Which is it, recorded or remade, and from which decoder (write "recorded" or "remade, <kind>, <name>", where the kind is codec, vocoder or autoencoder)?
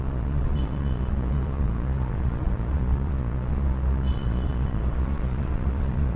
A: remade, vocoder, Vocos